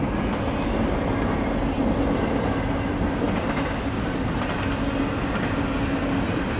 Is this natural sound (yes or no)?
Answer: yes